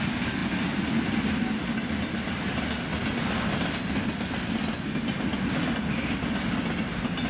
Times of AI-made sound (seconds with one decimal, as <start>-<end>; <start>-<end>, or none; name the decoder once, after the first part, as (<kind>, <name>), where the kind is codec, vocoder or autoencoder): none